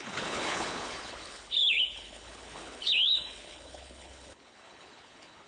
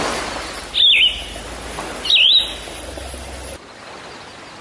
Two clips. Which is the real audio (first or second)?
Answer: second